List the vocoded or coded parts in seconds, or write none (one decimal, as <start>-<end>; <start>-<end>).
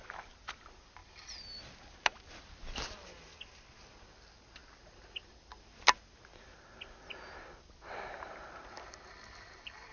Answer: none